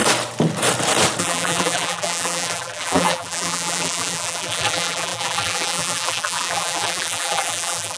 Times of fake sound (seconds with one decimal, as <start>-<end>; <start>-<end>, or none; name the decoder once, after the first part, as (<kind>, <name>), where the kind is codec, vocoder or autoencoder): 1.2-8.0 (vocoder, BigVGAN v2)

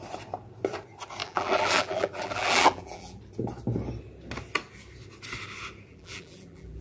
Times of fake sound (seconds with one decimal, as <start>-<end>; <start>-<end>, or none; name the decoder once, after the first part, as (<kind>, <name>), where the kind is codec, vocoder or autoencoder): 1.2-3.2 (vocoder, BigVGAN v2); 5.9-6.8

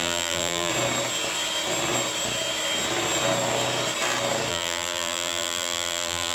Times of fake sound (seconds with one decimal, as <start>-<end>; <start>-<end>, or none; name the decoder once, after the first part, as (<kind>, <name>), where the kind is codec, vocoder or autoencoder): 0.0-0.7 (vocoder, BigVGAN v2); 4.5-6.3

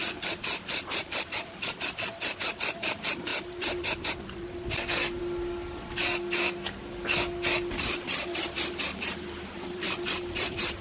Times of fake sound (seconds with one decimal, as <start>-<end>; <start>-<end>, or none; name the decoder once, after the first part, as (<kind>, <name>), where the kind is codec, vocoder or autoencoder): 0.0-3.3 (vocoder, BigVGAN v2); 5.2-10.8